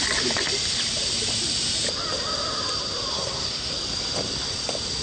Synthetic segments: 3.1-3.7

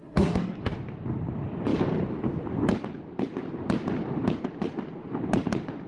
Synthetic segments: 0.0-0.6

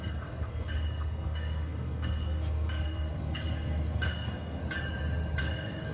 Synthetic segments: 0.0-4.6; 5.4-5.9

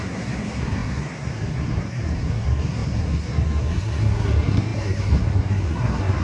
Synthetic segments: 0.0-6.2

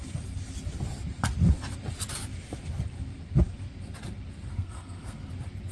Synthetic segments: 4.5-5.3